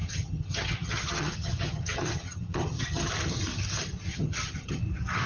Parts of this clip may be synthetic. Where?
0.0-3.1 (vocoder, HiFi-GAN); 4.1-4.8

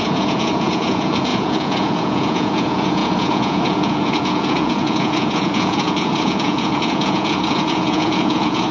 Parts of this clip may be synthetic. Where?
0.0-8.7 (vocoder, Vocos)

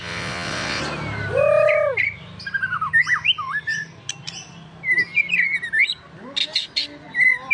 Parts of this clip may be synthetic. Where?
0.0-0.8 (vocoder, WaveNeXt)

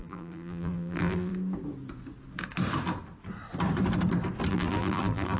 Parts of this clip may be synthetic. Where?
0.0-1.3 (vocoder, BigVGAN v2); 4.5-5.4

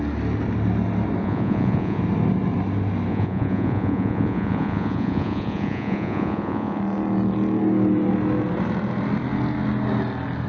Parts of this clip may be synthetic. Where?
1.2-2.0 (vocoder, Vocos); 3.1-6.8

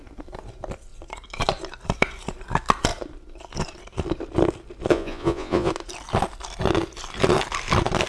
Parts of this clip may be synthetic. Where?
4.9-5.7 (vocoder, Vocos)